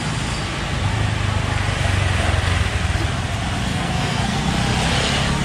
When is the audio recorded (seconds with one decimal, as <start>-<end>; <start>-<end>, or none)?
0.0-3.7; 4.5-5.4